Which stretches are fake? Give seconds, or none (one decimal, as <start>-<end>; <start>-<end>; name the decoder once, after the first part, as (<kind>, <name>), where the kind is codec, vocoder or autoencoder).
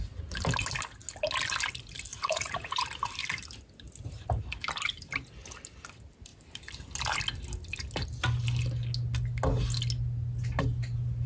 2.1-2.8 (vocoder, Vocos)